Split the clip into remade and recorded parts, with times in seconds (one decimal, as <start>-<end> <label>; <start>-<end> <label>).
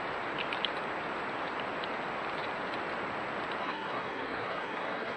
0.0-3.6 recorded; 3.6-5.2 remade